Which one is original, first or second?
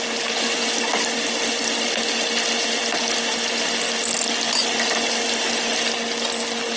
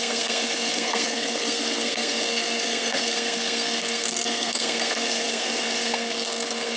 first